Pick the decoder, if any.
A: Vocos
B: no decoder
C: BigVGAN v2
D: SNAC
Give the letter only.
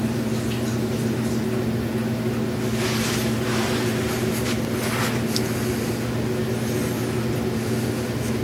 B